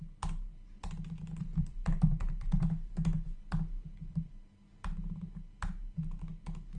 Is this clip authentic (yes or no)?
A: yes